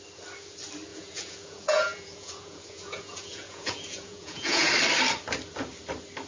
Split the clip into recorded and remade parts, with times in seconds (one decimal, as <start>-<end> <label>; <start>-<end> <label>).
0.0-0.9 recorded; 0.9-4.7 remade; 4.7-6.3 recorded